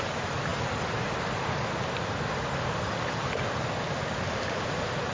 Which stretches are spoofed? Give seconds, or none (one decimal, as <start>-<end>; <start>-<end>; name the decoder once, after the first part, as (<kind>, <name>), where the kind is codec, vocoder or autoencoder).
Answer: none